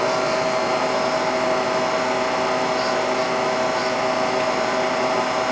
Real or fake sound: real